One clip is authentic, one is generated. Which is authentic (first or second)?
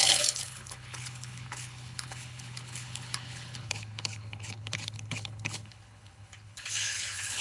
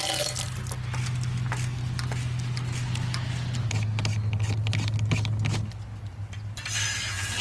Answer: second